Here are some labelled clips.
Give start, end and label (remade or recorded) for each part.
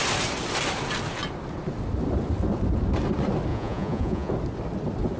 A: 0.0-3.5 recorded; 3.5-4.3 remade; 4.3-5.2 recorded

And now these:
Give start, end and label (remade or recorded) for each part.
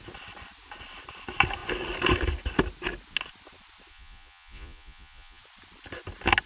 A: 0.0-3.9 recorded; 3.9-5.4 remade; 5.4-6.5 recorded